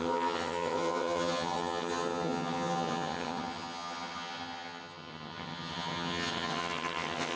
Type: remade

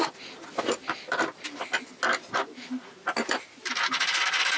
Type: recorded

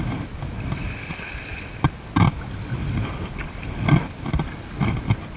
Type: recorded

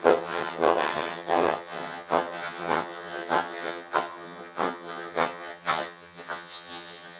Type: remade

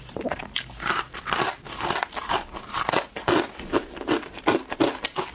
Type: recorded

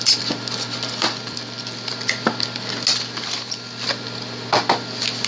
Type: recorded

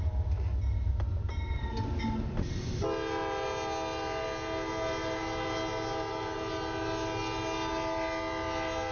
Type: recorded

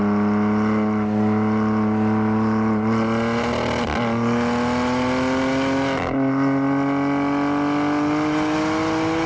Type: recorded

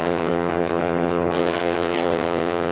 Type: remade